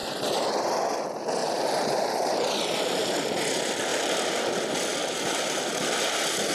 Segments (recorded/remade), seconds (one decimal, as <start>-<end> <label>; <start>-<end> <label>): 0.0-1.4 recorded; 1.4-3.0 remade; 3.0-3.9 recorded; 3.9-4.5 remade; 4.5-5.0 recorded; 5.0-5.7 remade; 5.7-6.5 recorded